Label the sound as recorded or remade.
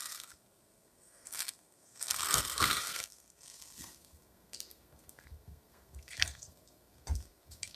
remade